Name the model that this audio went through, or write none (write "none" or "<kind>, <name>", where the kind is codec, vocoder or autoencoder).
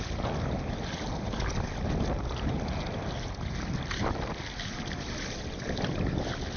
none